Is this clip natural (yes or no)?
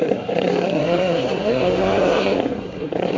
no